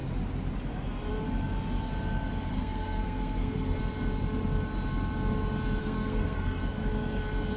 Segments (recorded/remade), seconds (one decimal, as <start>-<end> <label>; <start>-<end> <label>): 0.0-2.5 recorded; 2.5-3.8 remade; 3.8-5.8 recorded; 5.8-6.6 remade; 6.6-7.6 recorded